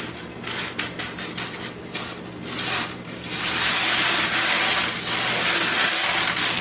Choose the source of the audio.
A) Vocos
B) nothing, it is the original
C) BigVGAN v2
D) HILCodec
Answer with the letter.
B